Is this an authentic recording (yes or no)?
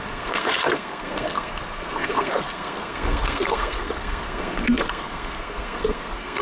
no